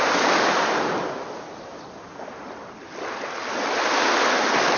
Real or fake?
real